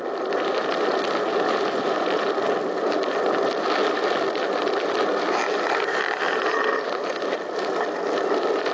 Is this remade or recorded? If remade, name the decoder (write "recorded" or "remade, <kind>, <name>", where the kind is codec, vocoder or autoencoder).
recorded